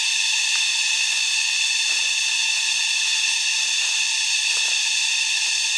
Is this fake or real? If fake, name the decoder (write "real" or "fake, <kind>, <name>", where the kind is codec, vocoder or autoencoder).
real